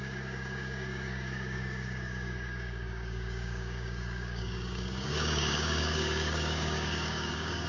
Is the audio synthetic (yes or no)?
yes